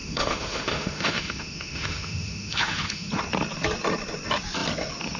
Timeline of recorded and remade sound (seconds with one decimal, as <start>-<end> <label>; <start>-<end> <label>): 0.0-3.1 remade; 3.1-5.2 recorded